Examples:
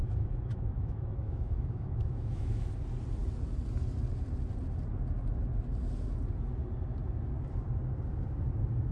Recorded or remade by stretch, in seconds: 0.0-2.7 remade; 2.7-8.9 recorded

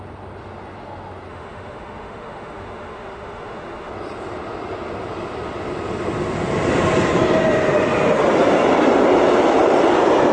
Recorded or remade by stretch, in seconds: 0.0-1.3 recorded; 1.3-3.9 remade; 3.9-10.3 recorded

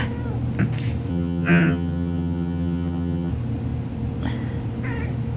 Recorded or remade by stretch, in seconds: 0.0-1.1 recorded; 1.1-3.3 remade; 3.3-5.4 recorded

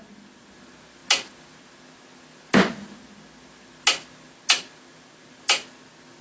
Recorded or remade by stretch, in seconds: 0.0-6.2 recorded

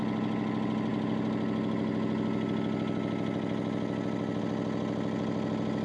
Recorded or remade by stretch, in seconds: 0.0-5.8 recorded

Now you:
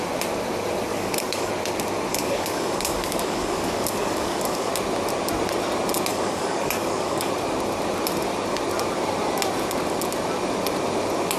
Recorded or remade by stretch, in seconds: 0.0-0.9 recorded; 0.9-1.5 remade; 1.5-2.1 recorded; 2.1-4.7 remade; 4.7-6.1 recorded; 6.1-7.3 remade; 7.3-11.4 recorded